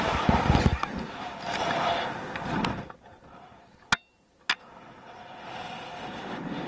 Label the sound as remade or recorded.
recorded